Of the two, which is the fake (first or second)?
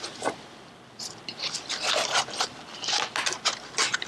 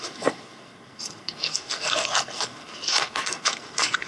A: second